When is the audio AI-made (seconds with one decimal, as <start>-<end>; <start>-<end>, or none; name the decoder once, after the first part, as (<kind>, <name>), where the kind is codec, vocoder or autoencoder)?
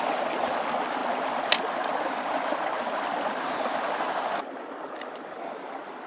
none